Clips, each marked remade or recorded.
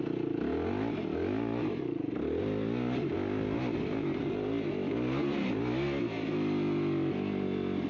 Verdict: recorded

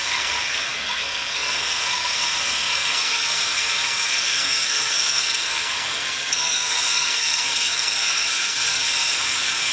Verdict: remade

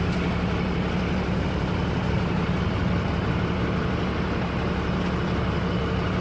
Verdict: recorded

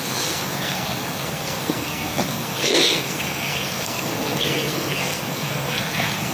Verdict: remade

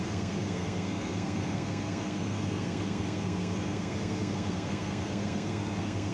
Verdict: remade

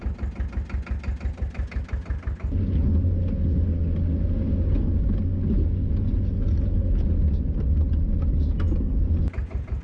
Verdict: recorded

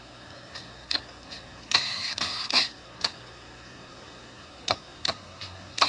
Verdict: remade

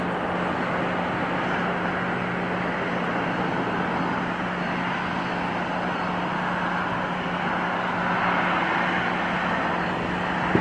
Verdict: recorded